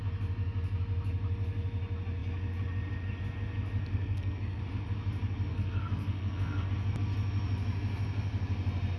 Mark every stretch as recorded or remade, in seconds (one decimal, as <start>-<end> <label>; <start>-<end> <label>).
0.0-3.9 recorded; 3.9-4.6 remade; 4.6-5.5 recorded; 5.5-6.7 remade; 6.7-9.0 recorded